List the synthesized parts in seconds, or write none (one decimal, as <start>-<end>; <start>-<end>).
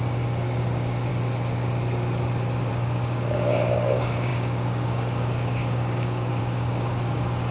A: 0.0-1.1; 2.7-7.5